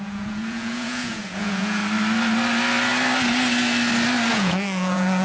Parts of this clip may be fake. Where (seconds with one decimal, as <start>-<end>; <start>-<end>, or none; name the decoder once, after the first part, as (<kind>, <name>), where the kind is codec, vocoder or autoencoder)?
0.0-1.8 (vocoder, Vocos); 4.3-5.2